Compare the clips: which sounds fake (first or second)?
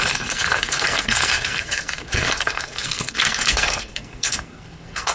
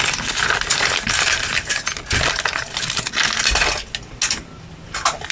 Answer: first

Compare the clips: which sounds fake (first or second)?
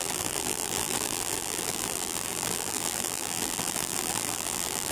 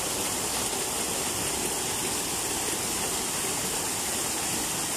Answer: first